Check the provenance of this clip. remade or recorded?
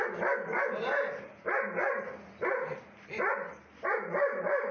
recorded